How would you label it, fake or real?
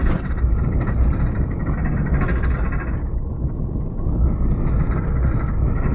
real